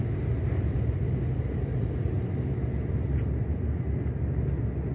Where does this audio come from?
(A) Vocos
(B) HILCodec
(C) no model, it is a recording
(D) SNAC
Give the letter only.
C